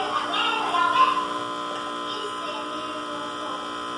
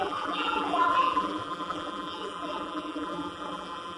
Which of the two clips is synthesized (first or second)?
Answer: second